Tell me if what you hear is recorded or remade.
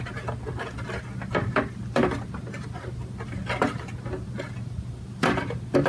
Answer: recorded